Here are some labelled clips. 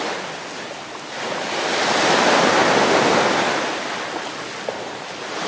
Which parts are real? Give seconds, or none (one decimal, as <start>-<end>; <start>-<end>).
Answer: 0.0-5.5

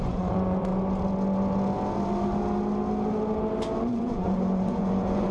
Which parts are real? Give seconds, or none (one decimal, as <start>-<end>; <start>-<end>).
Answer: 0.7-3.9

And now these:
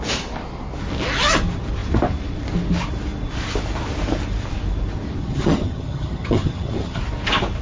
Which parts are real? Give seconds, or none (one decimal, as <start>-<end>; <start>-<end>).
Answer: 0.0-5.2; 7.0-7.6